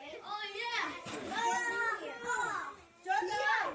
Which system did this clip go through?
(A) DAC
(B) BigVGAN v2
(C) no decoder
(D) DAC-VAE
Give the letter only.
C